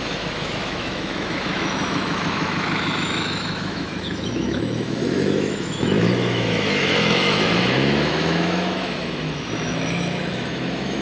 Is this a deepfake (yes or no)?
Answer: yes